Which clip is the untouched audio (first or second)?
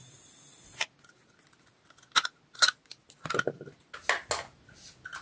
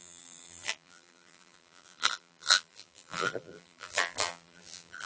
first